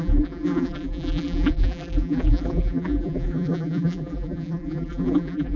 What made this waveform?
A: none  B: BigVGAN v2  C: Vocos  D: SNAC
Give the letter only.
B